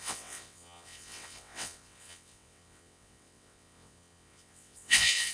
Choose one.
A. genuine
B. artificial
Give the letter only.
B